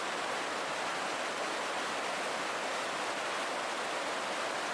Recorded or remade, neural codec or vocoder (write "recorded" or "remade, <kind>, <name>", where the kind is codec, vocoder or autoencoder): recorded